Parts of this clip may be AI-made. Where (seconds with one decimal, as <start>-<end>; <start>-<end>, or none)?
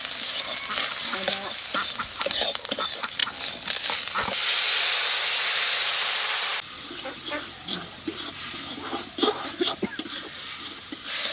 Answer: none